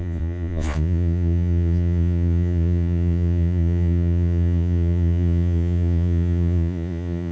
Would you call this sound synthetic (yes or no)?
yes